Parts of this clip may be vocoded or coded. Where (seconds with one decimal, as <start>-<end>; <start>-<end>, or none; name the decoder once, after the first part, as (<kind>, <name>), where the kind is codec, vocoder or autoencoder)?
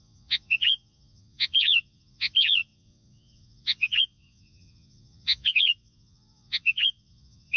0.0-7.6 (vocoder, Vocos)